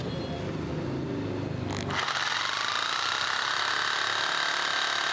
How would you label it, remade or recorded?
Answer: recorded